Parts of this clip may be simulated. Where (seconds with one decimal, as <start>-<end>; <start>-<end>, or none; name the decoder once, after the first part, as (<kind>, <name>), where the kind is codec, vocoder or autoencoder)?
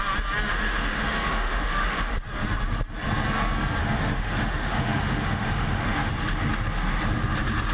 0.5-2.1 (autoencoder, DAC-VAE); 3.8-6.1